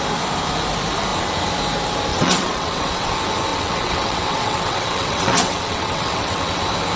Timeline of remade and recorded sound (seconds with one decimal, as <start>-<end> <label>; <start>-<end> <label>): 0.0-2.1 recorded; 2.1-3.1 remade; 3.1-3.5 recorded; 3.5-6.6 remade; 6.6-7.0 recorded